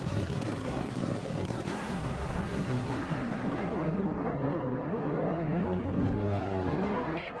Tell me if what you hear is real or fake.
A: fake